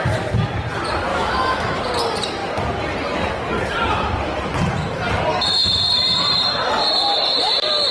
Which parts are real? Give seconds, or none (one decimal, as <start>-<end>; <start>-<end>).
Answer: 0.0-1.1; 1.8-7.9